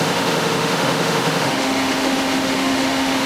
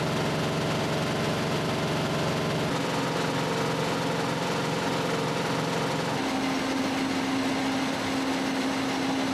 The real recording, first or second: second